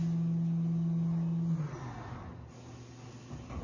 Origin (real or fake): real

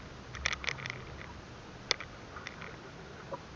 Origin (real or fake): real